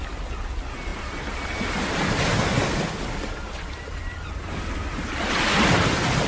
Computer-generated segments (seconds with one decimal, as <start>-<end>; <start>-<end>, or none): none